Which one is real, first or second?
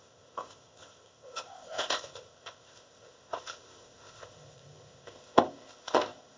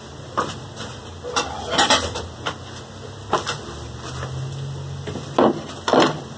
second